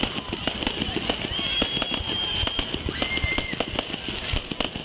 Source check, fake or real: real